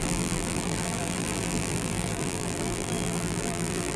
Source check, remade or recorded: remade